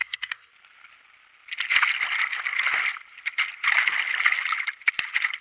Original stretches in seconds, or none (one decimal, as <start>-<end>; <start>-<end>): 0.5-5.4